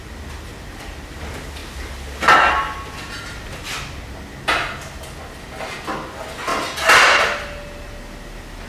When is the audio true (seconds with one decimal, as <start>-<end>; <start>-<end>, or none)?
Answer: 0.0-8.7